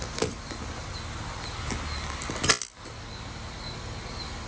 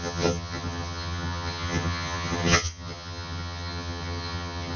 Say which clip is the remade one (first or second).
second